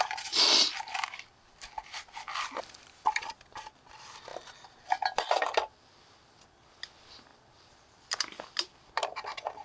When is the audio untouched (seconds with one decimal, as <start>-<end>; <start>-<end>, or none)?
0.0-0.6; 3.3-4.3; 6.4-7.3; 8.9-9.6